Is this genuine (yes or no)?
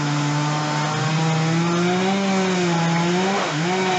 yes